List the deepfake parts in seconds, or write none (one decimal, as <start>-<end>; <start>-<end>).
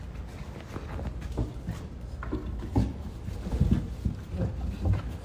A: none